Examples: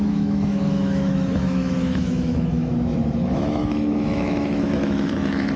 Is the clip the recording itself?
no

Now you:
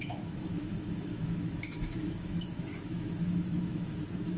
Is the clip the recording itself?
no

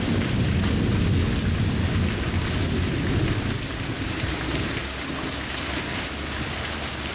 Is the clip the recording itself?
yes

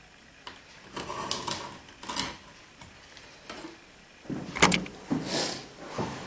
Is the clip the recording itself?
yes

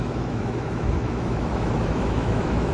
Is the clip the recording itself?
no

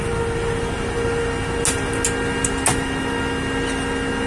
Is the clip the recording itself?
yes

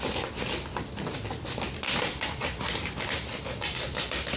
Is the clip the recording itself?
yes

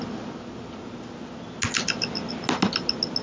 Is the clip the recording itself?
yes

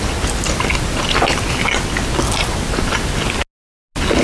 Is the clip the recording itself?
yes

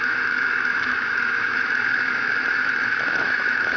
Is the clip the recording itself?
no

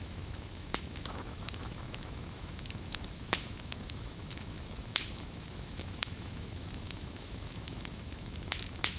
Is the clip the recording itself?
no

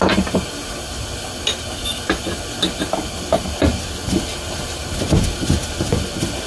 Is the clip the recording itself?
yes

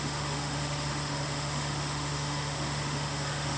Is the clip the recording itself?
no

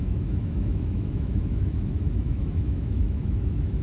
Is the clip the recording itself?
no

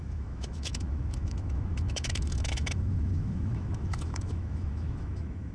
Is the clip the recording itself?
no